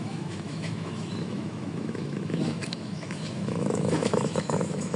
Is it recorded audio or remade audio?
remade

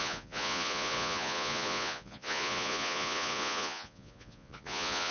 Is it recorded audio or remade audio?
remade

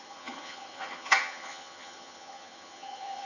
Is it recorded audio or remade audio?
remade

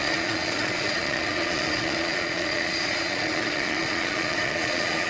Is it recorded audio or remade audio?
remade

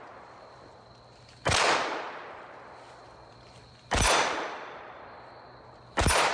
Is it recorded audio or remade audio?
remade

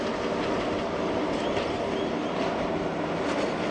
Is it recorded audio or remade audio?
recorded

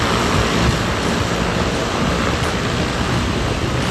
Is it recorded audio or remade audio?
recorded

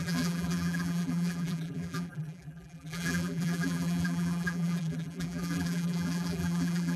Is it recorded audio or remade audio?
remade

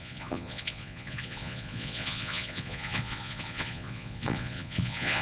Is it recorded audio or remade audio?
remade